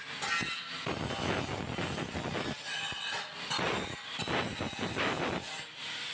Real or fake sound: real